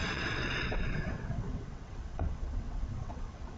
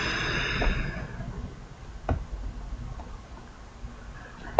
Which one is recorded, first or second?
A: second